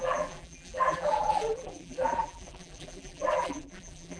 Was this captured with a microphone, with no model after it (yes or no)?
no